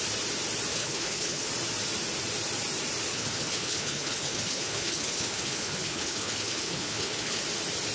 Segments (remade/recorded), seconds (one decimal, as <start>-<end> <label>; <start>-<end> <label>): 0.0-0.7 recorded; 0.7-1.5 remade; 1.5-3.1 recorded; 3.1-7.4 remade; 7.4-7.9 recorded